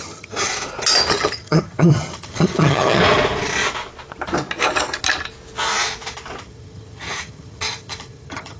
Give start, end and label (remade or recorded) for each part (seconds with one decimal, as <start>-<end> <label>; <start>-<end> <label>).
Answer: 0.0-0.5 remade; 0.5-1.1 recorded; 1.1-3.0 remade; 3.0-6.4 recorded; 6.4-8.6 remade